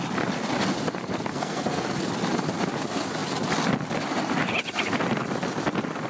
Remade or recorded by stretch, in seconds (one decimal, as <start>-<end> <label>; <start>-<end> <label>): 0.0-1.3 recorded; 1.3-1.9 remade; 1.9-6.1 recorded